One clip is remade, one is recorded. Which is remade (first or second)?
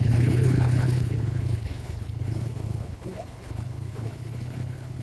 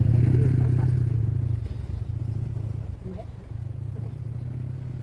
first